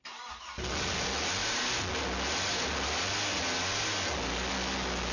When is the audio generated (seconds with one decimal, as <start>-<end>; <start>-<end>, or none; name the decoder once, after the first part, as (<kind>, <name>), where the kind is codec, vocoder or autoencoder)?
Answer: none